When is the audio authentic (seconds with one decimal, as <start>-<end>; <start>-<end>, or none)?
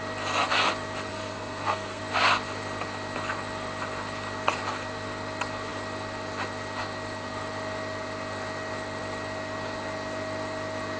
0.0-1.1; 2.0-11.0